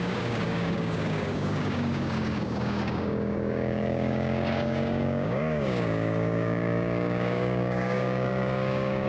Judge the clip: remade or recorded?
remade